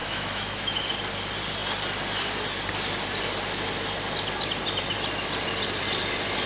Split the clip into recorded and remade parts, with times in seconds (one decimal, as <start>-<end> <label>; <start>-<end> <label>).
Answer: 0.0-0.8 remade; 0.8-6.5 recorded